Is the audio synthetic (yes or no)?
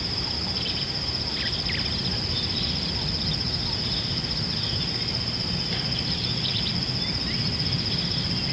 no